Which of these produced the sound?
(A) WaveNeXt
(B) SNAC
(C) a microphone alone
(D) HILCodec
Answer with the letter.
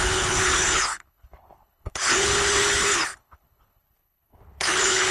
D